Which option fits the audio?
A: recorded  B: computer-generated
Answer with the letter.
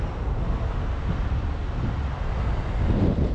A